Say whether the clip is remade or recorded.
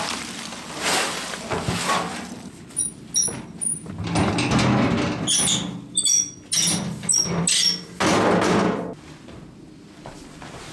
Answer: recorded